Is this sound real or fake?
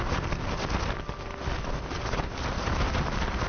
real